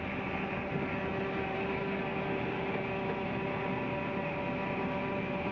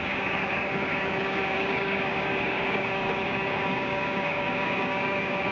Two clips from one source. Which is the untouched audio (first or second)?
first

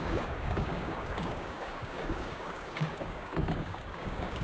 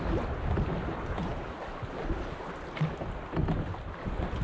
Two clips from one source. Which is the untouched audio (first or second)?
second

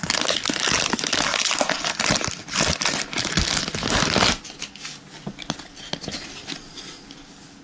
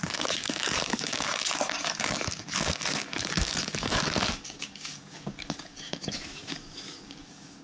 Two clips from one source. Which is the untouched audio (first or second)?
first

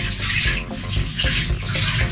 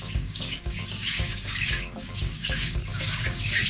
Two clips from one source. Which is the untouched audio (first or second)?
first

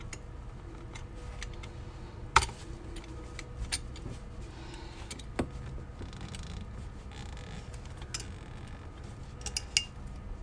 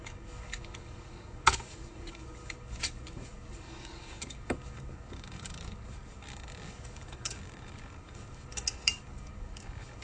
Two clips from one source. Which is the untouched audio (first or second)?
first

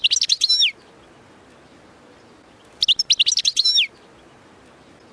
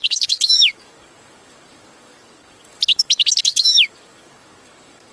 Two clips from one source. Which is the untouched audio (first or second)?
first